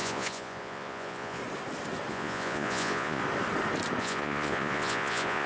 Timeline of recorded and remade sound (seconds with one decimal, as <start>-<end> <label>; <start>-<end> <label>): 0.0-1.4 remade; 1.4-2.1 recorded; 2.1-3.2 remade; 3.2-4.0 recorded; 4.0-5.5 remade